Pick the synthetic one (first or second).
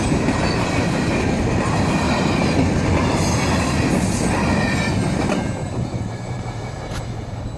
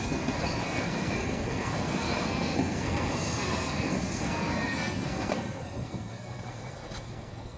second